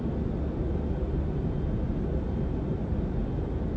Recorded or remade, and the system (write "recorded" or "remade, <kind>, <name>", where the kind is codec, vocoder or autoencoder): recorded